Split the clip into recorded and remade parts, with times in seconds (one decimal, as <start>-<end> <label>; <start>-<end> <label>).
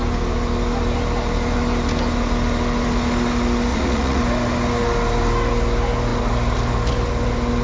0.0-3.7 recorded; 3.7-4.2 remade; 4.2-7.6 recorded